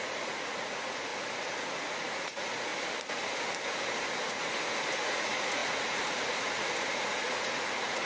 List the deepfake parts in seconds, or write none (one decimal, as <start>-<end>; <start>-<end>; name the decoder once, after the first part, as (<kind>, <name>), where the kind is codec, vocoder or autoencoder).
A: 0.0-1.1 (vocoder, Vocos); 1.6-2.7; 4.3-8.1